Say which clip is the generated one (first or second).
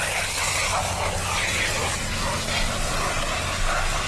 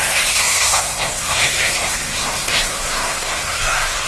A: second